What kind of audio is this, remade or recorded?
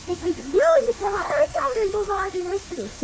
remade